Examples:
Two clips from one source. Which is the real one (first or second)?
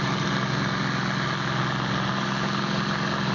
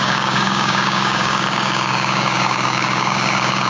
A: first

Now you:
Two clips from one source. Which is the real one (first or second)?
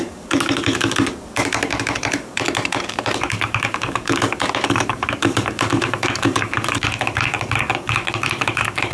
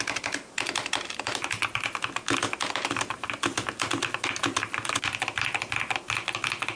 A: second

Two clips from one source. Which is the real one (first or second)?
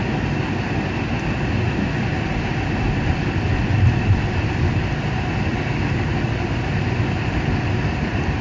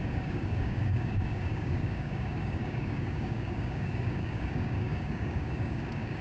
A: first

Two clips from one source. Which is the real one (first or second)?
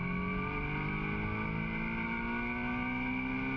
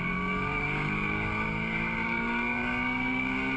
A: first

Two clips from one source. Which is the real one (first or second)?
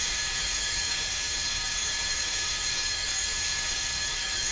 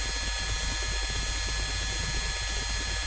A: second